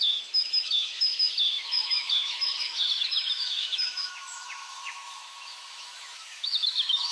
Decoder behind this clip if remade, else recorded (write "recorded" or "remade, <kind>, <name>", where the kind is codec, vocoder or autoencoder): remade, autoencoder, DAC-VAE